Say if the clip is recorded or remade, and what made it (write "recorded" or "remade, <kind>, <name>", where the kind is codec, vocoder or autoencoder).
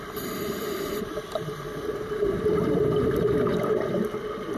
remade, vocoder, BigVGAN v2